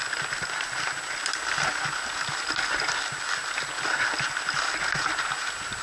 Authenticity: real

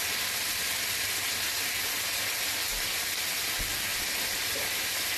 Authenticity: real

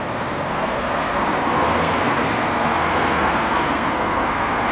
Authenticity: fake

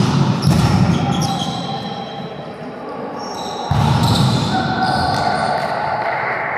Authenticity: fake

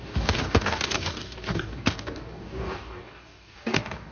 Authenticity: fake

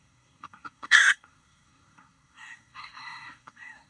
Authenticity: fake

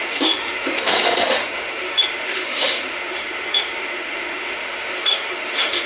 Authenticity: fake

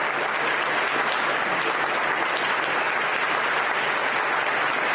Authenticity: real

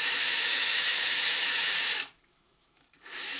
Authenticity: fake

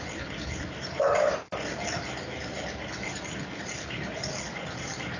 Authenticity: fake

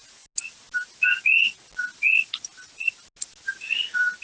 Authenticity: real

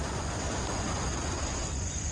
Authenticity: fake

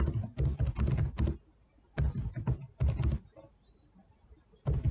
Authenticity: real